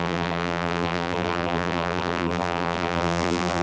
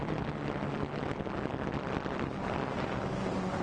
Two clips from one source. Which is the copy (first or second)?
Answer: first